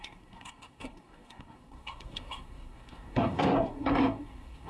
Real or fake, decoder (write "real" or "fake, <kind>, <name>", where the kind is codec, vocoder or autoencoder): fake, codec, SNAC